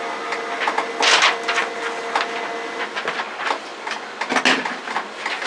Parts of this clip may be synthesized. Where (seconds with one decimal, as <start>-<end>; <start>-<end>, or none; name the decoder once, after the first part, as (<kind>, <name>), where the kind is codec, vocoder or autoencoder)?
none